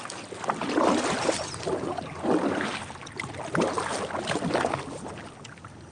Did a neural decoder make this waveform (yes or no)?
no